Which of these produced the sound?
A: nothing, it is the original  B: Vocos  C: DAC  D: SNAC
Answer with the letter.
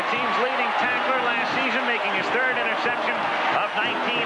A